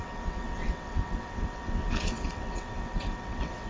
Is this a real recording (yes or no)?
no